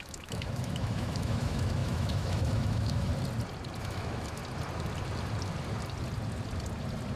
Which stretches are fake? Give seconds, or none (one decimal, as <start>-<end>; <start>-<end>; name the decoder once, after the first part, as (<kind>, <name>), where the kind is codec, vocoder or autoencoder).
0.0-3.1 (autoencoder, DAC-VAE); 3.8-4.4